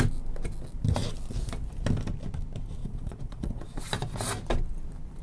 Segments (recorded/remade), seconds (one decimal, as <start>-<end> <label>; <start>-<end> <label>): 0.0-2.8 recorded; 2.8-3.8 remade; 3.8-5.2 recorded